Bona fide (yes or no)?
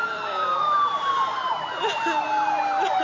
yes